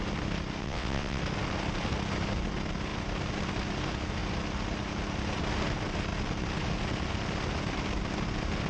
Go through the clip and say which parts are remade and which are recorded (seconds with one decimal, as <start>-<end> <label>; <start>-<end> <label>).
0.0-0.6 recorded; 0.6-1.2 remade; 1.2-8.7 recorded